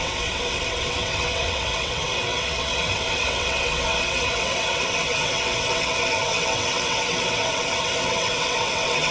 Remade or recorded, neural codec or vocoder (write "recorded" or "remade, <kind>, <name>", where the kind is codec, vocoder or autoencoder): remade, vocoder, WaveNeXt